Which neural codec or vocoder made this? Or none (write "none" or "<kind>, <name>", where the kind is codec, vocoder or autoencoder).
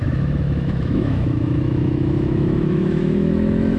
autoencoder, DAC-VAE